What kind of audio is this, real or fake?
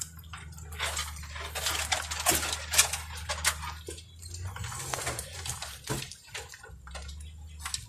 real